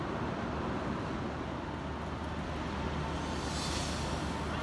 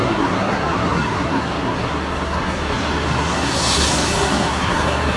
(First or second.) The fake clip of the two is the second